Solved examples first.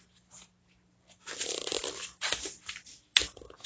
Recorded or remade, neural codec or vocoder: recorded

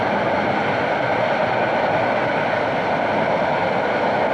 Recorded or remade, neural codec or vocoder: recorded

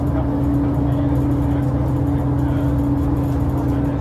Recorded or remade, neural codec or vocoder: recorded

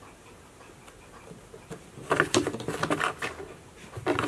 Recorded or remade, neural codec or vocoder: recorded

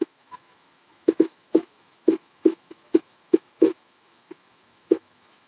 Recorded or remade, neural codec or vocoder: remade, autoencoder, DAC-VAE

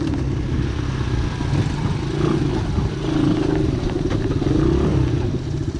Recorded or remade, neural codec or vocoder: recorded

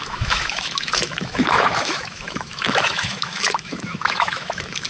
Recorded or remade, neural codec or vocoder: remade, autoencoder, DAC-VAE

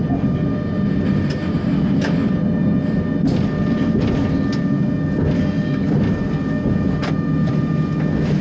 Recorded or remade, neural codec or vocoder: recorded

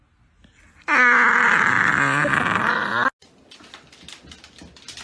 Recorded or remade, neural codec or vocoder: recorded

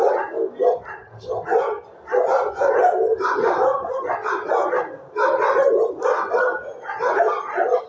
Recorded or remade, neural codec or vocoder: recorded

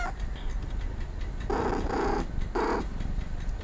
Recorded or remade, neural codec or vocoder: recorded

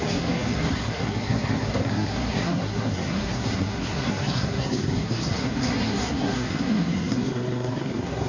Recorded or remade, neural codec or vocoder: remade, codec, SNAC